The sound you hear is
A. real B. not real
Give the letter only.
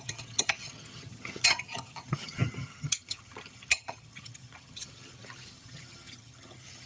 B